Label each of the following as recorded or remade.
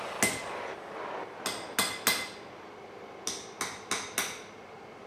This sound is recorded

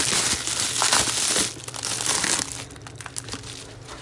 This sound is recorded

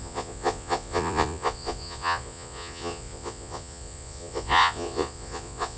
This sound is remade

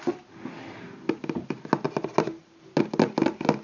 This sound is recorded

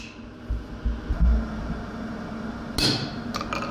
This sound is recorded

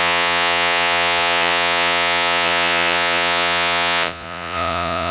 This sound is remade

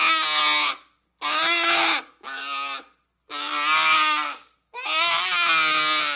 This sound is recorded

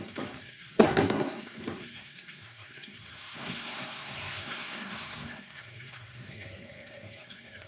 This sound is remade